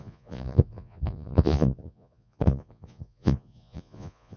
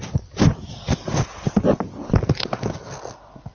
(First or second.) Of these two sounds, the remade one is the first